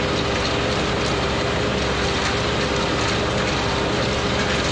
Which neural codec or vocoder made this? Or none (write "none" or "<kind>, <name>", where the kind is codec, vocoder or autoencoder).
none